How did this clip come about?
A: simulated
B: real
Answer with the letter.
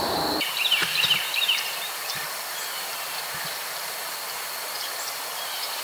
A